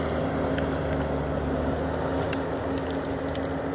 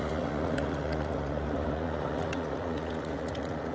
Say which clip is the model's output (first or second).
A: second